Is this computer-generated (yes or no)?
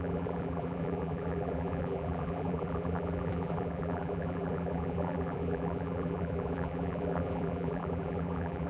yes